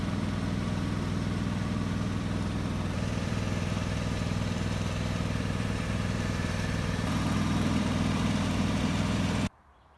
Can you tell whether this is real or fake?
fake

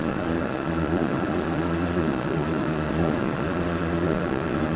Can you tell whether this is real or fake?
fake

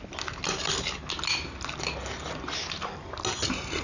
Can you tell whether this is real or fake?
real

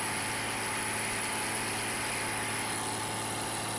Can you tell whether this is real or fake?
real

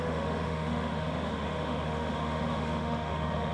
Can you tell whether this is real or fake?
fake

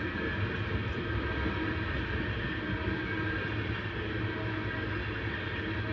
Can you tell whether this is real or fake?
real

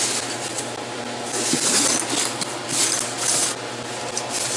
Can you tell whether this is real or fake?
real